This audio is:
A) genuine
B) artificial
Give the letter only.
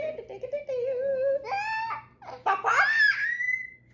A